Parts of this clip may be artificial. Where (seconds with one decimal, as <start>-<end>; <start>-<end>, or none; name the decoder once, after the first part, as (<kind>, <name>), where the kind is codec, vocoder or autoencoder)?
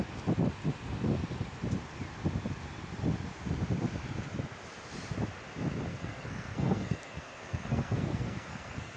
5.9-9.0 (codec, SNAC)